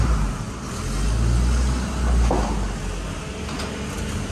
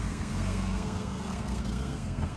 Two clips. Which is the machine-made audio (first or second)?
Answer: second